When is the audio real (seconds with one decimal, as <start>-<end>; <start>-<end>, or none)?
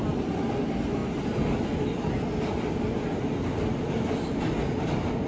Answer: 0.0-5.3